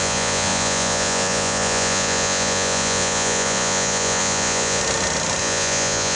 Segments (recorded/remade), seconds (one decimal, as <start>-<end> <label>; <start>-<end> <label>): 0.0-4.8 remade; 4.8-5.4 recorded; 5.4-6.2 remade